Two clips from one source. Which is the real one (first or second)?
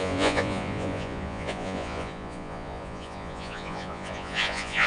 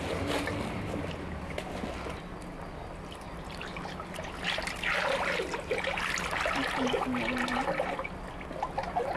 second